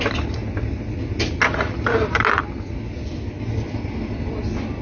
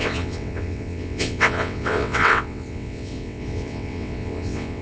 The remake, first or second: second